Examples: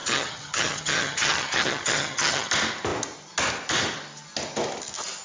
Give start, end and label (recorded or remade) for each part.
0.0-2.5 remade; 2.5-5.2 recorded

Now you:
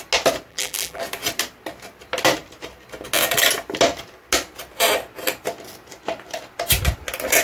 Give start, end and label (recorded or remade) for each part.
0.0-0.5 recorded; 0.5-1.0 remade; 1.0-7.4 recorded

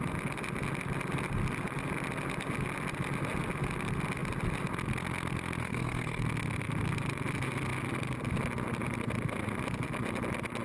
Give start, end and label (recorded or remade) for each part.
0.0-5.6 recorded; 5.6-6.2 remade; 6.2-10.6 recorded

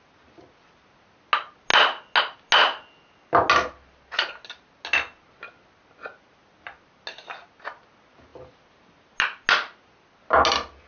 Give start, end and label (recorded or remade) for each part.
0.0-10.9 recorded

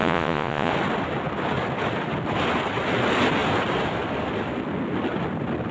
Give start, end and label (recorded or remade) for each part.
0.0-0.7 remade; 0.7-5.7 recorded

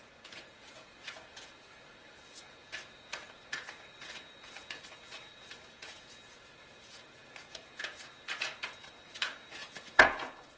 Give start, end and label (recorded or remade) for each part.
0.0-10.6 remade

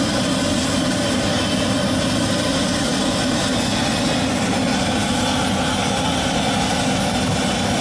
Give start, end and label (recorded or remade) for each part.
0.0-7.8 recorded